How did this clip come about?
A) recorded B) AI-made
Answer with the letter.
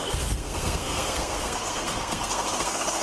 B